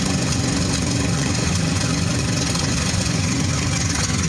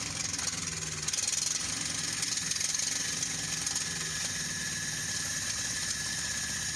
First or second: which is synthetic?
first